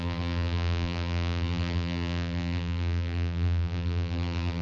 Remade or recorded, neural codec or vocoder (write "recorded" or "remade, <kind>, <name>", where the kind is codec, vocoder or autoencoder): remade, vocoder, BigVGAN v2